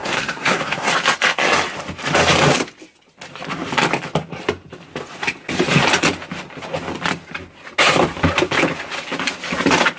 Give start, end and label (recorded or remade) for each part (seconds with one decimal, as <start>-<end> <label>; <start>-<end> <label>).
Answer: 0.0-0.9 remade; 0.9-10.0 recorded